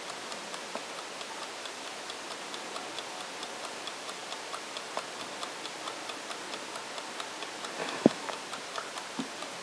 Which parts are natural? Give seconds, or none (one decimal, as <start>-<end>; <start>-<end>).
0.0-7.8; 8.4-9.6